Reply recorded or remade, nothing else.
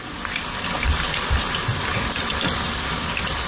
recorded